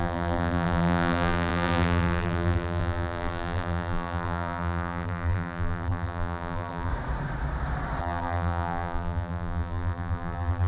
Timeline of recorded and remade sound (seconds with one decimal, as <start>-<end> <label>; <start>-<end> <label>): 0.0-6.9 remade; 6.9-8.0 recorded; 8.0-10.7 remade